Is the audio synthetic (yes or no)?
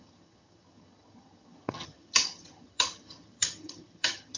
yes